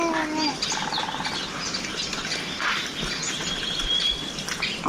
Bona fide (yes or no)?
yes